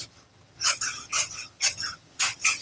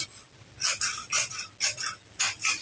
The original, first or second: second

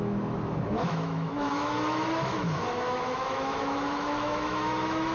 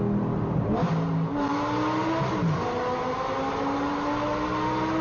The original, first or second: second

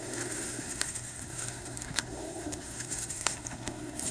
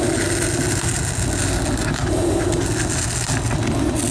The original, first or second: second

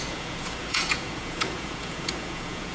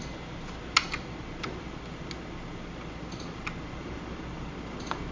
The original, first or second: second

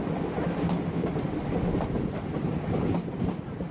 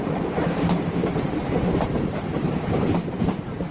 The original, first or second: first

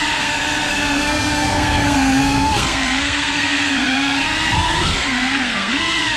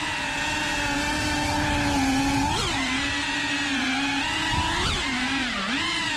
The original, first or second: second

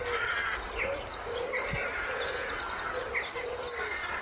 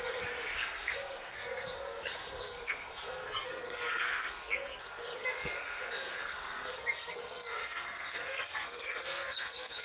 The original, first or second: first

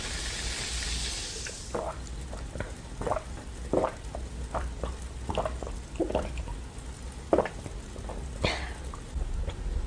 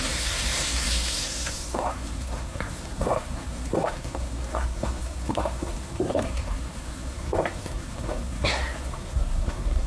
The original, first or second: first